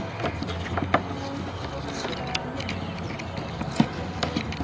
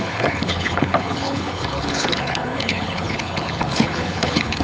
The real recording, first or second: first